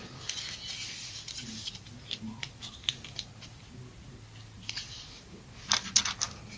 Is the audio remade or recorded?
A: recorded